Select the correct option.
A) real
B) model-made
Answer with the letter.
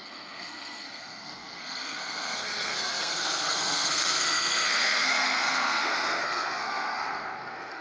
B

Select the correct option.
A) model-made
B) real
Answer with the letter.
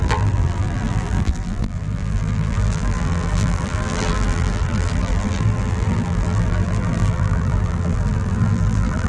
A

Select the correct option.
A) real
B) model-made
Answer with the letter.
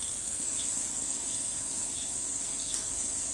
B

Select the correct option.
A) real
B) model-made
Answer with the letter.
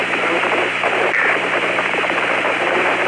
A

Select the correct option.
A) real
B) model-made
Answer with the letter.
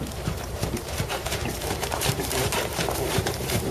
B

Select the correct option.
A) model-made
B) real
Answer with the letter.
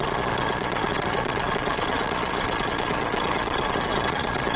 A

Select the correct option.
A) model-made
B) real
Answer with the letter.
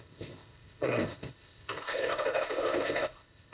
A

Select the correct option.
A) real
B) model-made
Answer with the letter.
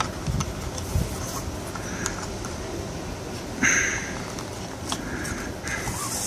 A